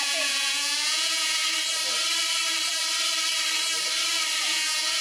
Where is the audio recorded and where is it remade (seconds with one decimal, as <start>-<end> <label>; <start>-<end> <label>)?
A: 0.0-1.4 remade; 1.4-4.4 recorded; 4.4-5.0 remade